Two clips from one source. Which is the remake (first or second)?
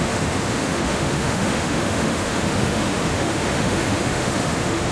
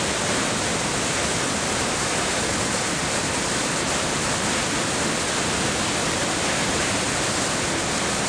first